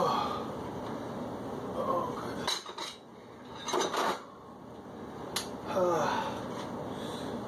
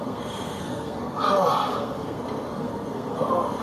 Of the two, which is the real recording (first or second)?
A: first